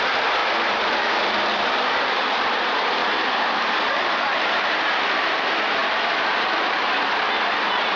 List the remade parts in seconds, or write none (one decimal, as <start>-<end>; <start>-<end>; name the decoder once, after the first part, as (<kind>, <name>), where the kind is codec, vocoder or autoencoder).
0.0-3.0 (vocoder, BigVGAN v2); 3.9-8.0